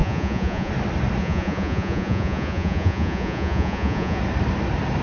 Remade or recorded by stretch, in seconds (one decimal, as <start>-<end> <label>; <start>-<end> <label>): 0.0-0.7 remade; 0.7-1.2 recorded; 1.2-4.2 remade; 4.2-5.0 recorded